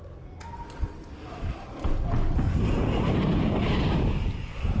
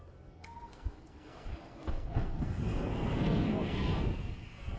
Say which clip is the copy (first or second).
second